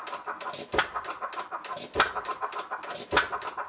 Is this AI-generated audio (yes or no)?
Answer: no